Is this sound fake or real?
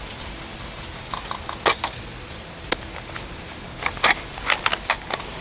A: real